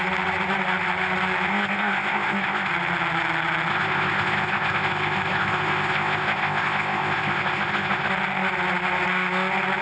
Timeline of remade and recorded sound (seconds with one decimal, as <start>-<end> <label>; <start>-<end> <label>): 0.0-1.5 recorded; 1.5-2.7 remade; 2.7-3.7 recorded; 3.7-8.1 remade; 8.1-9.8 recorded